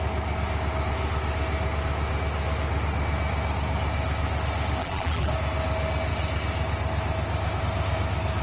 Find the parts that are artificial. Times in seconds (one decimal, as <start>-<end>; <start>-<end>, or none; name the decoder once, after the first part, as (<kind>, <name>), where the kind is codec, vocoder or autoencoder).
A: 4.8-5.3 (vocoder, BigVGAN v2)